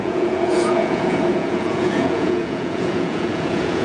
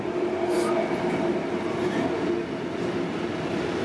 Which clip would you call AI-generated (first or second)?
first